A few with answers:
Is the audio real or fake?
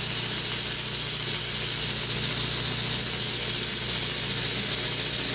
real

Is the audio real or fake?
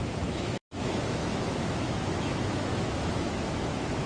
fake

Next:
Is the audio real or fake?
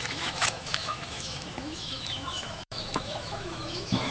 fake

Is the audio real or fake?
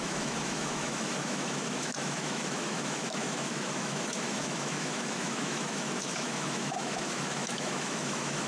fake